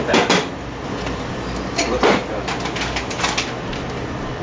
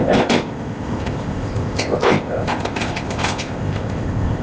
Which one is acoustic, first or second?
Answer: first